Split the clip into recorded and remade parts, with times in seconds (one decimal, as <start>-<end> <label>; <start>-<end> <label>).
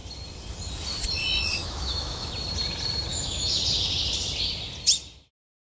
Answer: 0.0-1.6 recorded; 1.6-2.3 remade; 2.3-3.1 recorded; 3.1-3.6 remade; 3.6-5.8 recorded